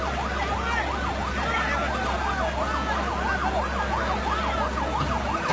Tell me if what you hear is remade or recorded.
recorded